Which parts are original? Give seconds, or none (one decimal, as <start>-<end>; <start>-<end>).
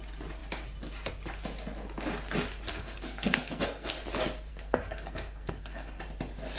0.0-2.7; 3.9-4.5; 6.0-6.6